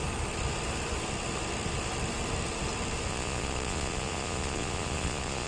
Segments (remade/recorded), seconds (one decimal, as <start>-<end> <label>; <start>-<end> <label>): 0.0-3.1 recorded; 3.1-5.5 remade